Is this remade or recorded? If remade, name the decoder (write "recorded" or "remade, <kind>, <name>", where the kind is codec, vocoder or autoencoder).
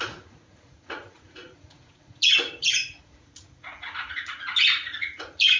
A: remade, vocoder, Vocos